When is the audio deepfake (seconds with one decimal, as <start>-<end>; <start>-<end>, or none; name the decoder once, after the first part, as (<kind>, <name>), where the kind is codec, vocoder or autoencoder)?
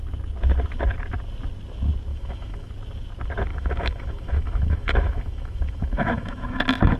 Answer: 2.1-2.7 (autoencoder, DAC-VAE); 3.5-6.6